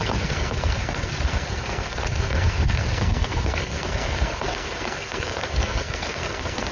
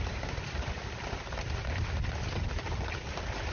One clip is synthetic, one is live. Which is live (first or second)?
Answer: second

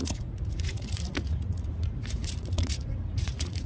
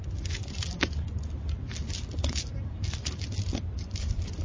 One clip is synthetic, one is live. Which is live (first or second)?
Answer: second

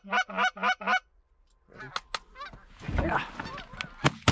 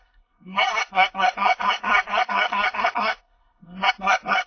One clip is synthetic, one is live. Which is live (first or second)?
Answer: first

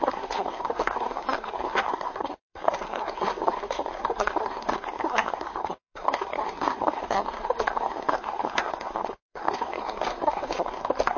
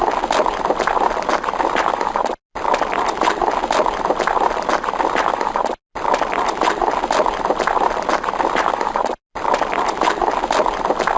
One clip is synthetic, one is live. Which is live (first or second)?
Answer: second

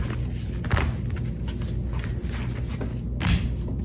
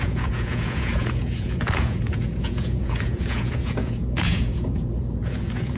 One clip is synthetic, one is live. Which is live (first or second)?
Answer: first